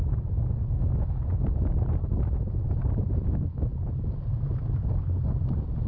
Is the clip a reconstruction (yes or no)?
no